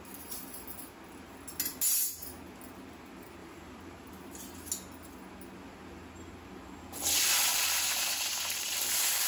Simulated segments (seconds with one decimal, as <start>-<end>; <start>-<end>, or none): 3.4-4.1; 7.5-9.3